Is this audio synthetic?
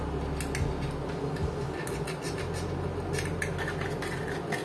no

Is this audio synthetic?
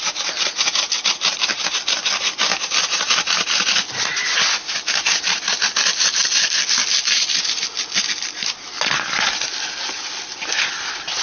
no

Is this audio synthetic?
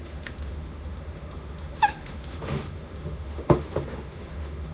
yes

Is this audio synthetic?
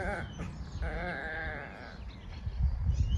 no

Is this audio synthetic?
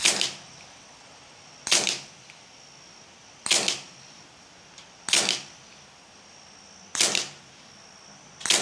no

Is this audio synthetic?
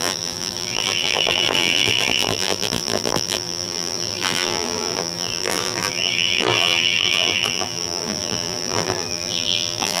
yes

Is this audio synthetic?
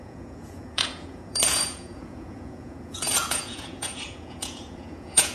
yes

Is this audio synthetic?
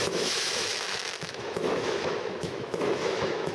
yes